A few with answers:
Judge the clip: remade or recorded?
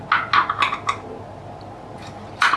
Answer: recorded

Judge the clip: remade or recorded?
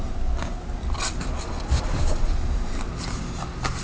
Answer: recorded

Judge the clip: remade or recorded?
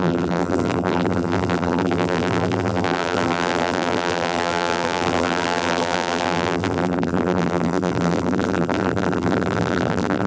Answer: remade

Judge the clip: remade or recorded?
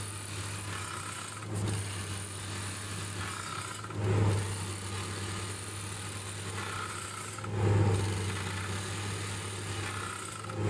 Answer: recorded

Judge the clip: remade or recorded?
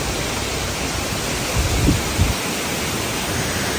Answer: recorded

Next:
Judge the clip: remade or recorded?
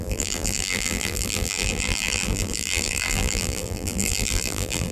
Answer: remade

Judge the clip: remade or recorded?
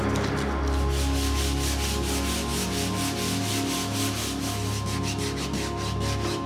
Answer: recorded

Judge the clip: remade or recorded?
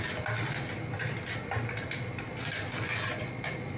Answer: recorded